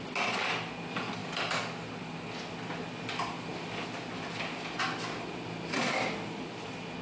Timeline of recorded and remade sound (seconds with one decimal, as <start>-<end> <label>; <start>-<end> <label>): 0.0-7.0 recorded

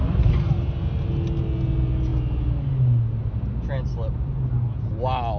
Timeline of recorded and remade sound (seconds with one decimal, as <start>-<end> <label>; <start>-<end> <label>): 0.0-5.4 recorded

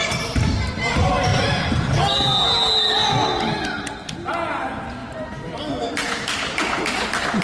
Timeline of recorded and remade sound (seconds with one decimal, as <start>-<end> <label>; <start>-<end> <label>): 0.0-7.4 recorded

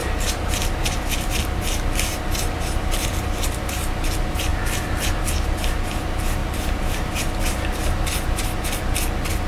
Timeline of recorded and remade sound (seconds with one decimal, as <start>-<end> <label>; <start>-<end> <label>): 0.0-1.3 remade; 1.3-2.1 recorded; 2.1-3.6 remade; 3.6-6.4 recorded; 6.4-7.1 remade; 7.1-9.5 recorded

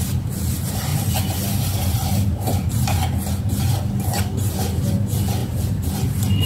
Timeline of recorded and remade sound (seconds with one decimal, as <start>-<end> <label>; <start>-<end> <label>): 0.0-5.4 recorded; 5.4-5.9 remade; 5.9-6.5 recorded

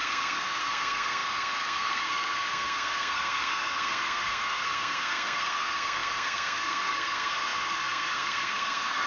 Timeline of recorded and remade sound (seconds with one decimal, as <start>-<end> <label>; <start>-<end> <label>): 0.0-9.1 remade